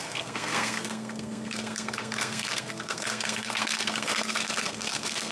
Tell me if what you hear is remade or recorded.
remade